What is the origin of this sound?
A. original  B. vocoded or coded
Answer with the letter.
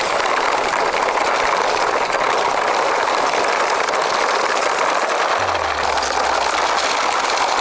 A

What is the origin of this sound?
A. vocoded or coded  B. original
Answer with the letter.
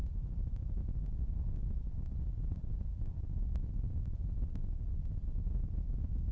B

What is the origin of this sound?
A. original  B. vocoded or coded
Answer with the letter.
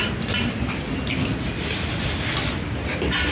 A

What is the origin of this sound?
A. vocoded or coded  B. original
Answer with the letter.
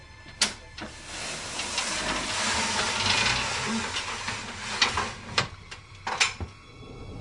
B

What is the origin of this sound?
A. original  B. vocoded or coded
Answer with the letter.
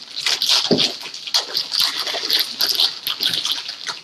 A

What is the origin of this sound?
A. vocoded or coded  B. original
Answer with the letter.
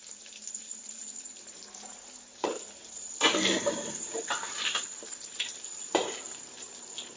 A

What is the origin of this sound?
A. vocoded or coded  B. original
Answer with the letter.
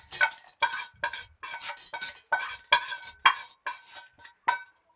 B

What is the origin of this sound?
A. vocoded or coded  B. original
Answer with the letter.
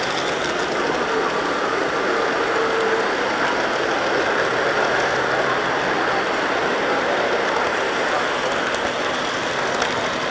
B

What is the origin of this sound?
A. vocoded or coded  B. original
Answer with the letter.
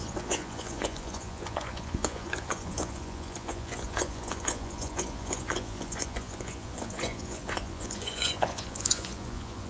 A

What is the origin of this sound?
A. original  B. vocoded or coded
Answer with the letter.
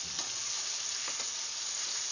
A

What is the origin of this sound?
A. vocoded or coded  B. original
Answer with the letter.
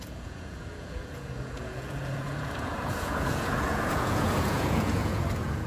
A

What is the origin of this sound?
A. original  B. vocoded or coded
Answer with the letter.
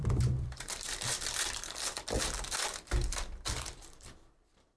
B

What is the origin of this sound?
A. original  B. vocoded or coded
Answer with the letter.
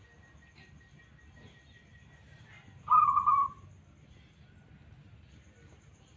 A